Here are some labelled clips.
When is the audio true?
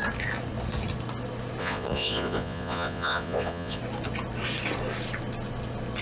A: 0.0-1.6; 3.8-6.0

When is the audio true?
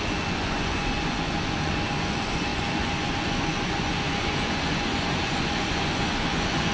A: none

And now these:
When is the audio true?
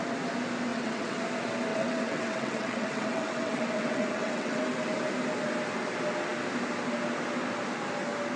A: 0.0-0.7; 1.2-1.7; 4.6-8.4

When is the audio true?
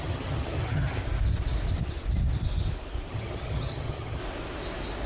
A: 1.0-3.1; 4.2-5.1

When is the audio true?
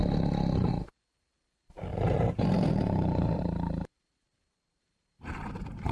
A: 0.0-1.9; 5.3-5.9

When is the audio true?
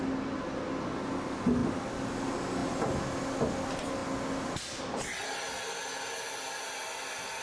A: 0.0-7.4